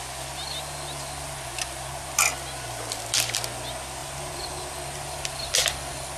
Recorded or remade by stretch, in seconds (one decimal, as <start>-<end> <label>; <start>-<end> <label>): 0.0-4.0 recorded; 4.0-4.6 remade; 4.6-6.2 recorded